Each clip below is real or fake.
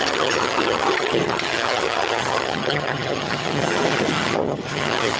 fake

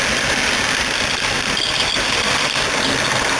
real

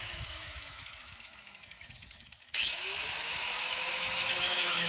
fake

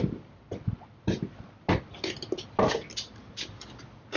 real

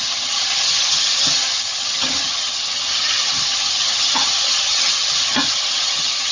fake